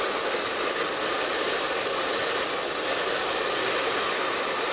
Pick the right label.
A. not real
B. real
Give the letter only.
B